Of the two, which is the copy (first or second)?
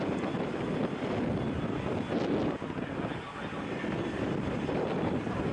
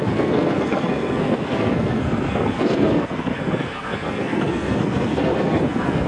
second